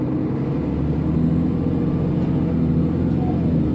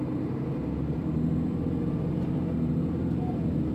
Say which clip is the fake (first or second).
second